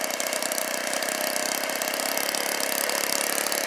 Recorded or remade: recorded